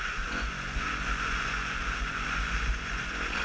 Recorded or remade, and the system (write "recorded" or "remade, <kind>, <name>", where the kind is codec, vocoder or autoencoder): remade, vocoder, Vocos